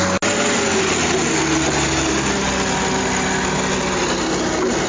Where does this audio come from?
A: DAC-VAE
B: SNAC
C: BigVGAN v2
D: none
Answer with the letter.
D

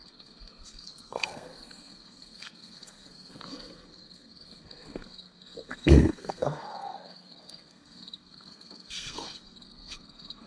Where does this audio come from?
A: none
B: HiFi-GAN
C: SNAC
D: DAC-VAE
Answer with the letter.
C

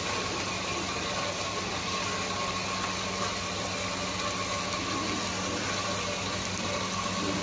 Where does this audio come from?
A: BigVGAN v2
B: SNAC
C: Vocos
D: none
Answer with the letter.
D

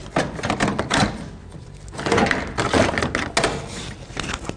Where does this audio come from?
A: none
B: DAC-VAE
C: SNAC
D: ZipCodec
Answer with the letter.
A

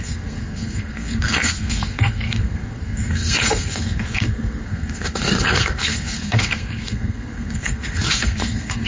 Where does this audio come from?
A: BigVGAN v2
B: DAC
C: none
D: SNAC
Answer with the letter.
D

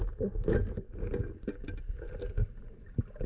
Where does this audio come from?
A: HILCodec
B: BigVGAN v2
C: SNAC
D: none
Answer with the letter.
D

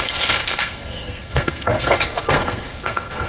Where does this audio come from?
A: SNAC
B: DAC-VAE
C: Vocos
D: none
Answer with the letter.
A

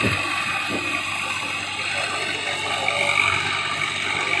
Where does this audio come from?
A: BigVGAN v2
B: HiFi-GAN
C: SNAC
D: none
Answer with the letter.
D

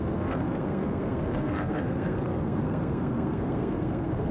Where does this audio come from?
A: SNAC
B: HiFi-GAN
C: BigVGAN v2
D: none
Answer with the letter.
A